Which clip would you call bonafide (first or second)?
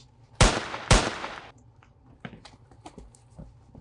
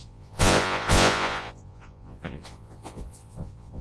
first